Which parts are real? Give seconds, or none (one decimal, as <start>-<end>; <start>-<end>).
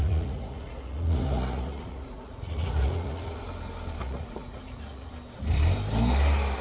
3.4-4.0; 5.1-6.6